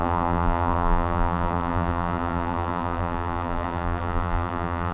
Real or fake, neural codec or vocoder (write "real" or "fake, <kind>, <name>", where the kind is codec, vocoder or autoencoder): fake, vocoder, BigVGAN v2